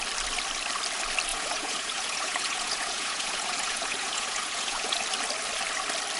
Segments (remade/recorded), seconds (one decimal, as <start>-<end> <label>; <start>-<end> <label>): 0.0-1.3 recorded; 1.3-5.0 remade; 5.0-6.2 recorded